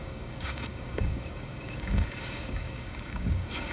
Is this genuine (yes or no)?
no